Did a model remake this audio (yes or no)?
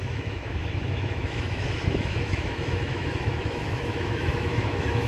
yes